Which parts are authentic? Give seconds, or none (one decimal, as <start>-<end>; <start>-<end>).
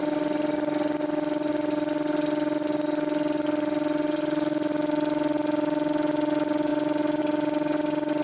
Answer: 0.0-8.2